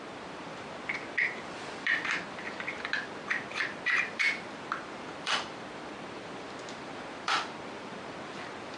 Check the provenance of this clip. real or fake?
fake